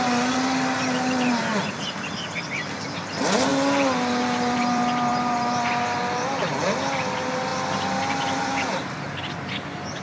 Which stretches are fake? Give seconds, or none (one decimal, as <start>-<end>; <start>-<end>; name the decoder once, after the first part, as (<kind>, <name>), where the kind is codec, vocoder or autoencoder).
3.5-4.6 (vocoder, BigVGAN v2); 5.1-6.0; 7.5-9.5